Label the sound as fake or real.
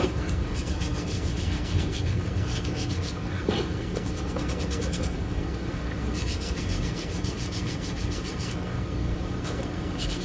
fake